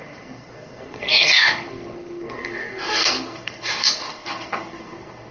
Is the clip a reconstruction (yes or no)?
yes